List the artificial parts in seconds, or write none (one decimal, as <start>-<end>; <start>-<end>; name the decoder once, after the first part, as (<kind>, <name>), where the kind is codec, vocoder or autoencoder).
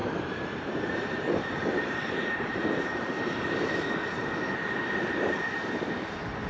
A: 0.0-3.9 (vocoder, BigVGAN v2)